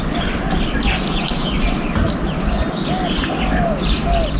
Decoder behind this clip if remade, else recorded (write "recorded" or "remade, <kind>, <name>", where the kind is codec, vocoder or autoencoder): recorded